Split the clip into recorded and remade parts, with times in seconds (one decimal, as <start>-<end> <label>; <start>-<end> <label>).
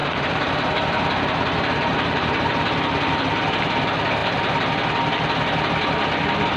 0.0-2.5 remade; 2.5-6.6 recorded